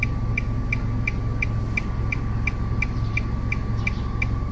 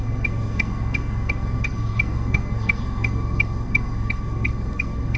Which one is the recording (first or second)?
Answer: first